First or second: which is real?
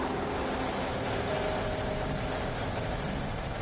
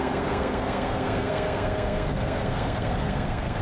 first